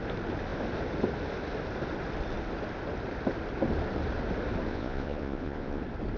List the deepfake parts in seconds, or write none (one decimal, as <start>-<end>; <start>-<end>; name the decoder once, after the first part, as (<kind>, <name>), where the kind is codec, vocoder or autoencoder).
4.7-5.8 (vocoder, Vocos)